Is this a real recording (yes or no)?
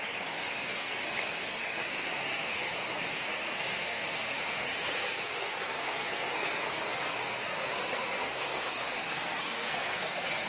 no